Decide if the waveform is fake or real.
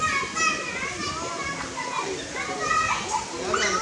real